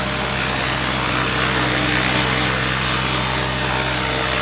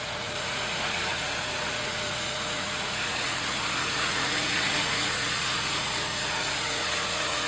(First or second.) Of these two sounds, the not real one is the second